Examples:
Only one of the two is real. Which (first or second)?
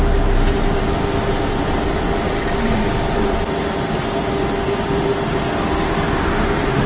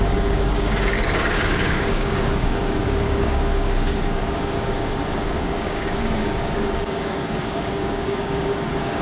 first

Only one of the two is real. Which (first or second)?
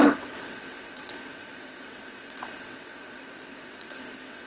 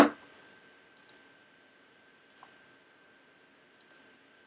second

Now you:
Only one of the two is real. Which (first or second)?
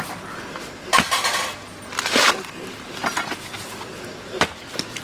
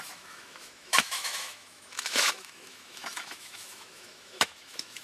first